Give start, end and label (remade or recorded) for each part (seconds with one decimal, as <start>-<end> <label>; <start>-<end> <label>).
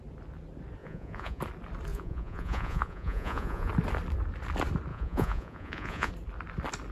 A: 0.0-0.8 recorded; 0.8-1.4 remade; 1.4-1.9 recorded; 1.9-3.7 remade; 3.7-4.9 recorded; 4.9-6.1 remade; 6.1-6.9 recorded